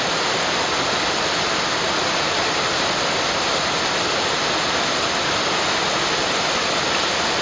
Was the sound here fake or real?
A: real